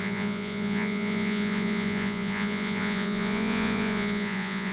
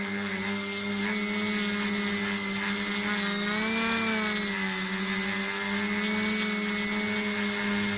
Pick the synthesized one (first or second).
first